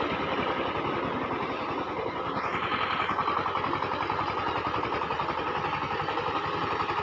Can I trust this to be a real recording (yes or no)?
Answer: yes